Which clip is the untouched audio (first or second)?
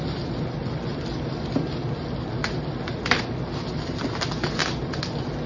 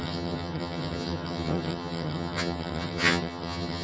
first